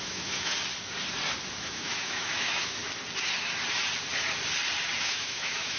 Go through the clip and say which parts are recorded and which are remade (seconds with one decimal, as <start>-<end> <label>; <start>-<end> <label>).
0.0-0.5 remade; 0.5-1.6 recorded; 1.6-2.8 remade; 2.8-5.0 recorded; 5.0-5.8 remade